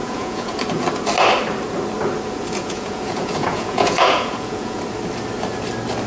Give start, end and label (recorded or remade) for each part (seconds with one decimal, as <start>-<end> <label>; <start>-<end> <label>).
0.0-0.6 remade; 0.6-2.4 recorded; 2.4-4.8 remade; 4.8-6.1 recorded